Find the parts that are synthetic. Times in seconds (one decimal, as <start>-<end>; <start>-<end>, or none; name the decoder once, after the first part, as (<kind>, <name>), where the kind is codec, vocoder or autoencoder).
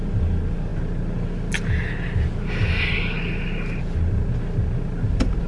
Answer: none